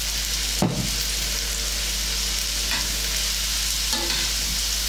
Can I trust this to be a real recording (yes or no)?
yes